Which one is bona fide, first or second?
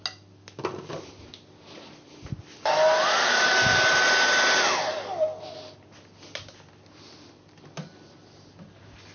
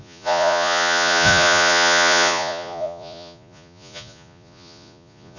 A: first